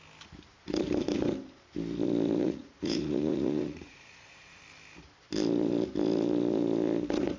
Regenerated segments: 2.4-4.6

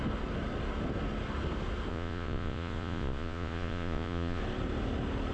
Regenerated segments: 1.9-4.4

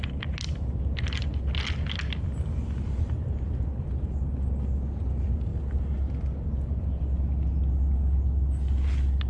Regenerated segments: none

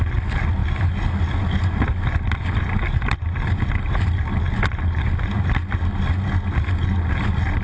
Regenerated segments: none